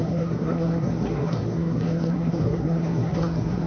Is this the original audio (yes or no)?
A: no